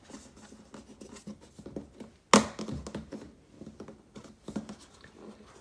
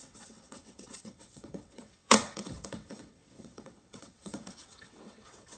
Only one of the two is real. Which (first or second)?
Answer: first